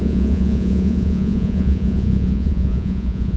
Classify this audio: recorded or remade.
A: remade